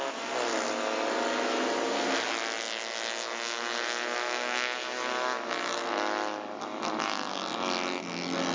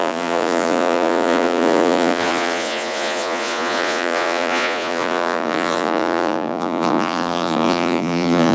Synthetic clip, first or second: second